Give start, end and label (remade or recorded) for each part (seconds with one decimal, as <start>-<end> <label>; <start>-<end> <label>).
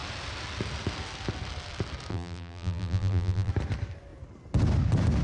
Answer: 0.0-2.1 recorded; 2.1-3.5 remade; 3.5-5.2 recorded